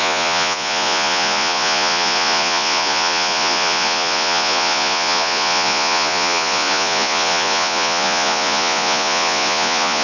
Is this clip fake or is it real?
fake